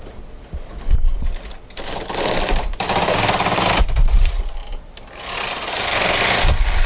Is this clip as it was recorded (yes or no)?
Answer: yes